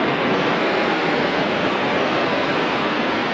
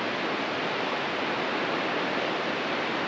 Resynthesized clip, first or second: first